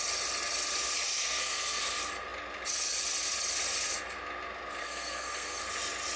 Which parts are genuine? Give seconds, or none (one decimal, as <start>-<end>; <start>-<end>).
0.0-1.2; 1.8-4.8; 5.6-6.2